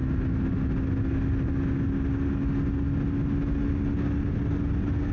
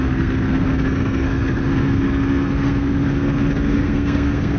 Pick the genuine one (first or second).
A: first